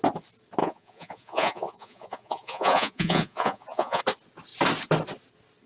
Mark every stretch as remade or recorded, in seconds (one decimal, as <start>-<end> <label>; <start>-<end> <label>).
0.0-0.6 recorded; 0.6-4.0 remade; 4.0-5.7 recorded